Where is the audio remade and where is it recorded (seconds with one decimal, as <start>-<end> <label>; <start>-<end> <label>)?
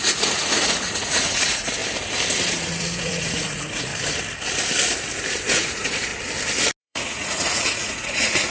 0.0-1.8 remade; 1.8-2.6 recorded; 2.6-3.9 remade; 3.9-5.5 recorded; 5.5-6.1 remade; 6.1-6.8 recorded; 6.8-8.5 remade